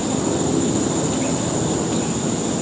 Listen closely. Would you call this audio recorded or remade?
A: recorded